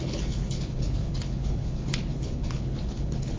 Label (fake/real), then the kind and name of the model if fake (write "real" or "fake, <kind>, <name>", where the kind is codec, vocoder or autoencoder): fake, codec, HILCodec